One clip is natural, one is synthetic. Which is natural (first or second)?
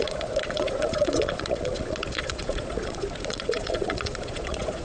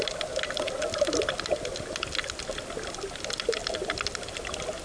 second